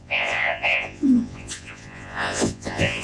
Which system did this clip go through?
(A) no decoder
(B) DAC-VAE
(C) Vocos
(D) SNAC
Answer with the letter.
C